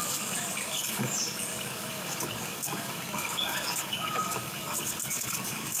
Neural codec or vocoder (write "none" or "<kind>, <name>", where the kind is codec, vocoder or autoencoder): codec, DAC